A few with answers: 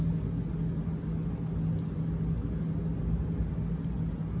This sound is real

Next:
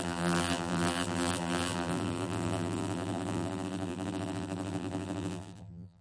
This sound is fake